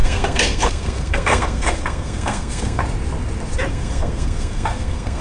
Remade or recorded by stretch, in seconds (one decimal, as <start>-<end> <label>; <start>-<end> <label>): 0.0-2.8 remade; 2.8-3.7 recorded; 3.7-5.2 remade